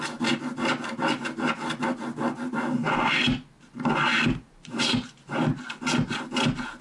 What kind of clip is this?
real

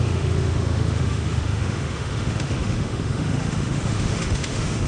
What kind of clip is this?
fake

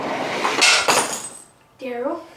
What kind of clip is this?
real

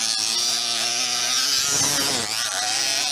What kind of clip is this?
real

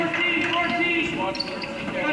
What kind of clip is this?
real